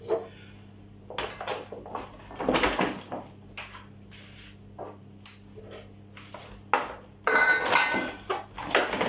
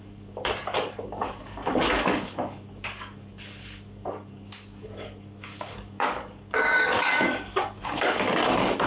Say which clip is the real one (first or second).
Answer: first